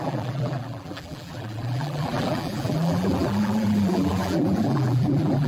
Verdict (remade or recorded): remade